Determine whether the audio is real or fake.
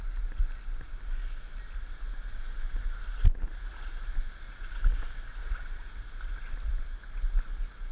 real